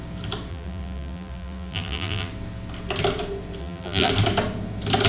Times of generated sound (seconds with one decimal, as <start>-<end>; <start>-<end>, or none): 0.5-2.3; 3.6-4.1